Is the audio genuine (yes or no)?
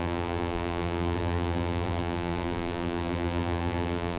no